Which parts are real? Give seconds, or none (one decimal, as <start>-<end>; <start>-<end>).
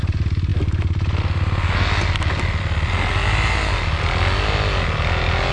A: 0.0-5.5